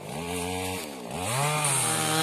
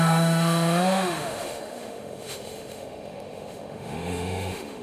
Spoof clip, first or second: second